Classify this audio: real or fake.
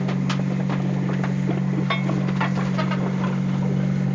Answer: real